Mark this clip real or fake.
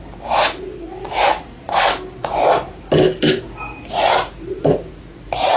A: real